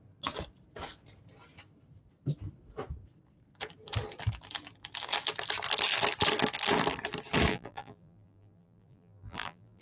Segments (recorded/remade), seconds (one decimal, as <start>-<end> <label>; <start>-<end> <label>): 0.0-7.5 recorded; 7.5-9.8 remade